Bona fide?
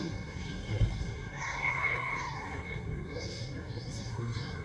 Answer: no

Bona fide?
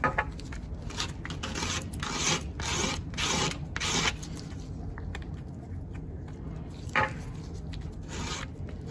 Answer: yes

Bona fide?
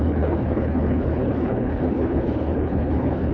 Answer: no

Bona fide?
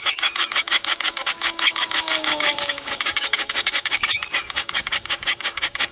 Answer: no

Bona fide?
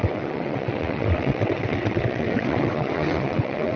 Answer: no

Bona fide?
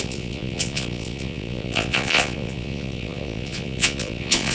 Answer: no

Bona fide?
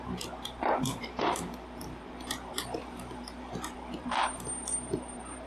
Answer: no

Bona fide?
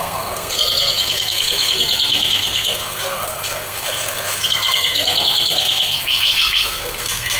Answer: no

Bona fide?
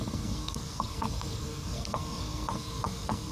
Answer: no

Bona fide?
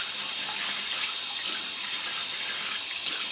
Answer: yes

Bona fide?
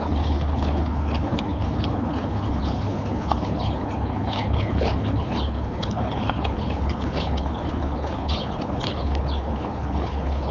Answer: no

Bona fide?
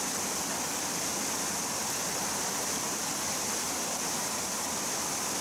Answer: yes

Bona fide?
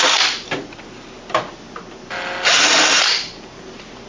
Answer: yes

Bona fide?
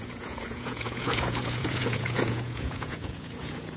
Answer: no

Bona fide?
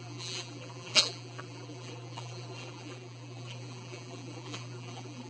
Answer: no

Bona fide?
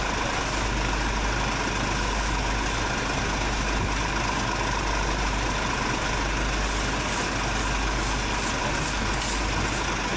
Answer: yes